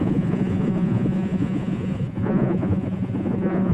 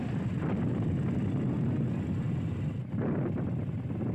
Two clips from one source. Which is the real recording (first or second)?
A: second